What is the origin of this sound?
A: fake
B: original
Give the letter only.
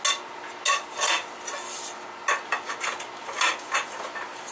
B